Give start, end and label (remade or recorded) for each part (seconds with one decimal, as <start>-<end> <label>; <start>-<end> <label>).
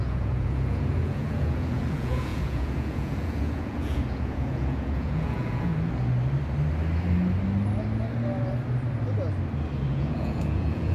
0.0-5.7 remade; 5.7-9.9 recorded; 9.9-10.9 remade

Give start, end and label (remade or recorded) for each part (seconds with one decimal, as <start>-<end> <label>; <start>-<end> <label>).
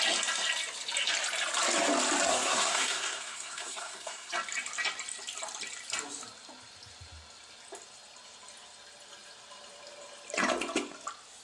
0.0-2.3 recorded; 2.3-4.3 remade; 4.3-11.4 recorded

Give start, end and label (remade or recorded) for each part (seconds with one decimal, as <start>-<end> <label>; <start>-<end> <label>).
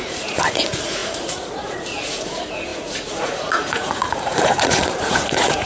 0.0-5.7 remade